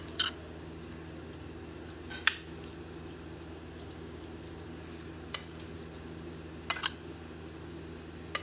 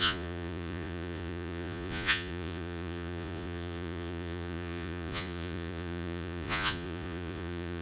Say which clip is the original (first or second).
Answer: first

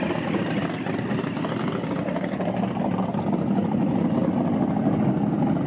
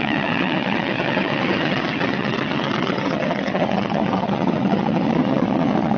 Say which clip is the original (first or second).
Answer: first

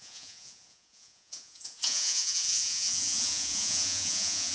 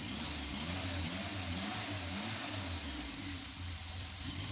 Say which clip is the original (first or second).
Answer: second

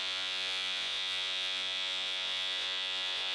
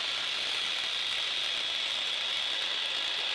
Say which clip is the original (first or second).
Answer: second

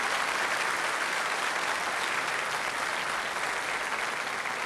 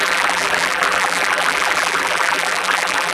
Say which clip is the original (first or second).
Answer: first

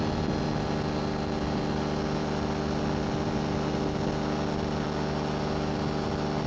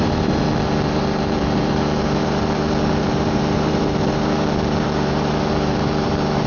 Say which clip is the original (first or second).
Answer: first